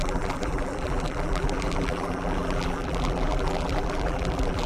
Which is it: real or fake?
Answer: fake